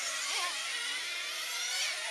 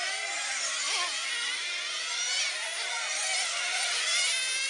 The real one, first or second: second